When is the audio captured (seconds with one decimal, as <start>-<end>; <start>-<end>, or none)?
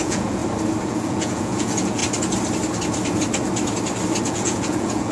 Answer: 0.4-0.9; 2.0-4.2